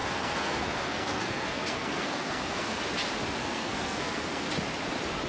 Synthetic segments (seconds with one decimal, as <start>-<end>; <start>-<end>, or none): 0.0-2.8; 3.4-4.5